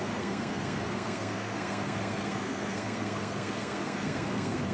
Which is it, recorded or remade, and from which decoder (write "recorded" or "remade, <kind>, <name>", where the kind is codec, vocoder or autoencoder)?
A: remade, codec, SNAC